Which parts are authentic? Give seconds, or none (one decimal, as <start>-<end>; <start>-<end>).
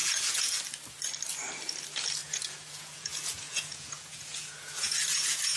0.5-2.2